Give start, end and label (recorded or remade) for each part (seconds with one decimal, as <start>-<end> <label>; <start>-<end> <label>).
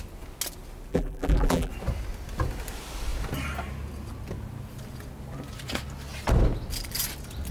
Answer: 0.0-0.9 recorded; 0.9-1.7 remade; 1.7-7.5 recorded